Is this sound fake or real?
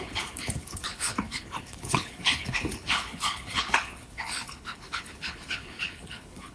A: fake